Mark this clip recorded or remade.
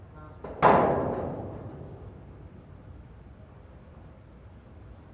recorded